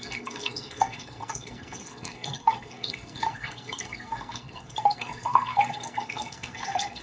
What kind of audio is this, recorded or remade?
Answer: remade